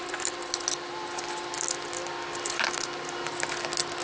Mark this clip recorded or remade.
recorded